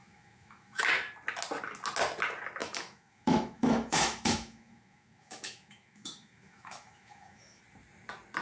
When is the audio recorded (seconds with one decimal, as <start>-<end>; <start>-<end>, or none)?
0.9-2.6; 7.6-8.4